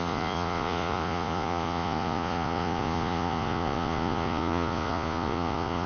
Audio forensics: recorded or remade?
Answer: remade